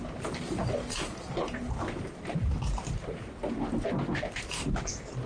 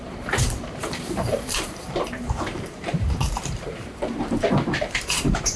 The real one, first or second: first